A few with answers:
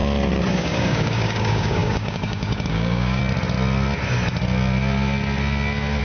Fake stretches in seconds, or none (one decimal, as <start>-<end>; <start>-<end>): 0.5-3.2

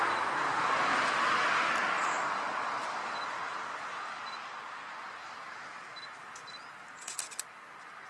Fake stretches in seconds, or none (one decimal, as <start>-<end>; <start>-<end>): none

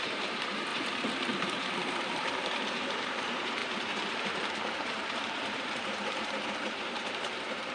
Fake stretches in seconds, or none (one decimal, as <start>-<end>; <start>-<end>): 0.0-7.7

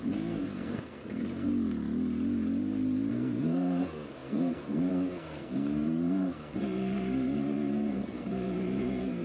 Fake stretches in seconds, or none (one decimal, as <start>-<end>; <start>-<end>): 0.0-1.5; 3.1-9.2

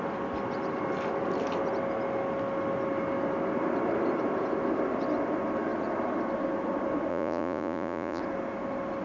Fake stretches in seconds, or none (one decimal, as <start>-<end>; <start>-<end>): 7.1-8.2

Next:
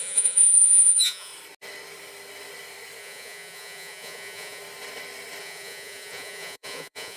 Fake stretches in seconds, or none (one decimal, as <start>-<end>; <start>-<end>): 0.0-1.3; 3.0-4.6; 5.4-7.2

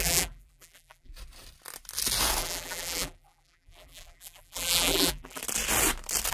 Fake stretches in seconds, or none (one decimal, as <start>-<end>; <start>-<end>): 0.0-1.1; 2.4-5.4